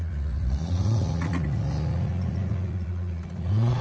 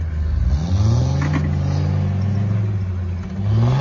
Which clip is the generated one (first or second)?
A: first